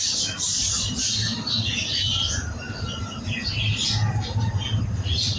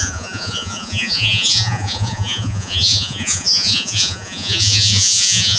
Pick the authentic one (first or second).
first